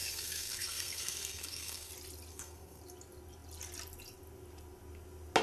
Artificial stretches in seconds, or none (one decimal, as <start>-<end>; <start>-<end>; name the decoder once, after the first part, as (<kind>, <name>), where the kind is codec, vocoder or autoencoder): 0.0-1.9 (codec, SNAC); 2.3-2.8